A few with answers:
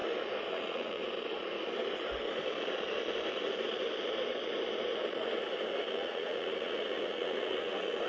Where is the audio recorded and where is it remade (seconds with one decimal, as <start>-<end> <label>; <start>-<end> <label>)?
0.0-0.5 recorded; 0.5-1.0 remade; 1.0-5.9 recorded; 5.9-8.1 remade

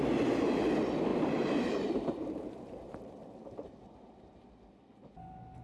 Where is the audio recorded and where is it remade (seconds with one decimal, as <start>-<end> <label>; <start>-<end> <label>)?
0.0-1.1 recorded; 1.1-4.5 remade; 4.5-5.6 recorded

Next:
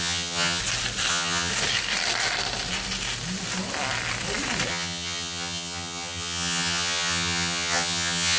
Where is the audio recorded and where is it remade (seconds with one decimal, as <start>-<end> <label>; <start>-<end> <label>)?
0.0-0.6 remade; 0.6-1.1 recorded; 1.1-1.5 remade; 1.5-4.7 recorded; 4.7-8.4 remade

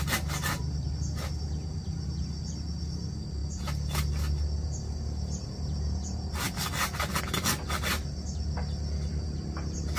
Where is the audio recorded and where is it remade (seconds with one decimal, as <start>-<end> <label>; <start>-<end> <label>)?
0.0-10.0 recorded